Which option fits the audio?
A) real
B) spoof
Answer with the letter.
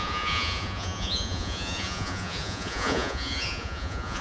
B